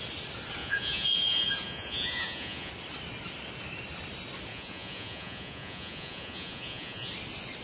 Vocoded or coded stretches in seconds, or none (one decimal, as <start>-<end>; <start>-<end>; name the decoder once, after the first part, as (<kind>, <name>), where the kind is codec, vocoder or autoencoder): 0.6-2.7 (vocoder, Vocos); 4.5-7.1